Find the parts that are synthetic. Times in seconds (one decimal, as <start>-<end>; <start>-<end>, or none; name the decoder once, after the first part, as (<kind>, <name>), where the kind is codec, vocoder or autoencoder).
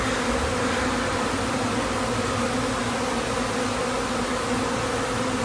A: none